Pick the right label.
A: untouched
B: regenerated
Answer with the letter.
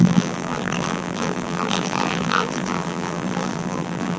B